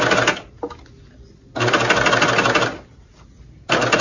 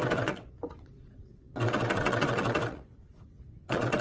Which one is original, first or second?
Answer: first